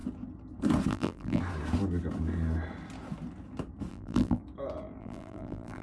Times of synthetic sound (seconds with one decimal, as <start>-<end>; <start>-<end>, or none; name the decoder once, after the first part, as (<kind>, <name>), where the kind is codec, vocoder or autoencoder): 0.9-1.4 (vocoder, BigVGAN v2); 3.9-4.4; 5.0-5.8